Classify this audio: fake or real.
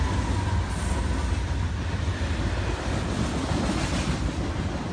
real